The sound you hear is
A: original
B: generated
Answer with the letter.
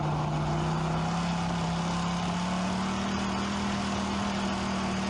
A